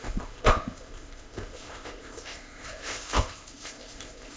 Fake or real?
fake